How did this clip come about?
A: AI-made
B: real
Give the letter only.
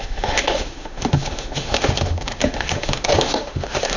A